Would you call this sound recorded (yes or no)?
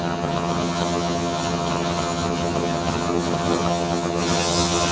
no